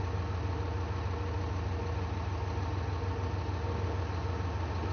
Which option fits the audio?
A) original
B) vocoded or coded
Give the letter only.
A